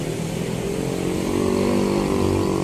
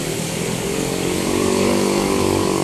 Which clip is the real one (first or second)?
first